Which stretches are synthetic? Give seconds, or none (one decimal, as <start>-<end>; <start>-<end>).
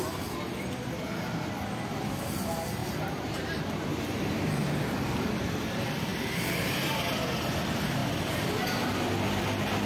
2.8-4.6; 6.1-7.6